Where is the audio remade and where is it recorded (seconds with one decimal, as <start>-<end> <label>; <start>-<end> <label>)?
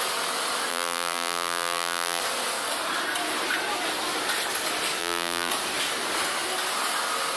0.0-0.7 recorded; 0.7-2.2 remade; 2.2-5.0 recorded; 5.0-5.5 remade; 5.5-7.4 recorded